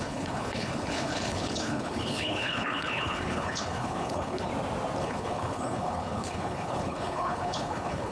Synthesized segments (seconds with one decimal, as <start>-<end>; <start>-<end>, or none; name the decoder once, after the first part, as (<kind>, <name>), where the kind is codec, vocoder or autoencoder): 0.0-4.5 (codec, HILCodec); 5.0-8.1